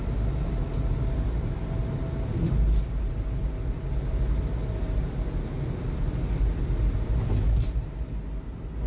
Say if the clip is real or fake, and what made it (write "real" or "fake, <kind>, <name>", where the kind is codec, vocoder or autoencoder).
real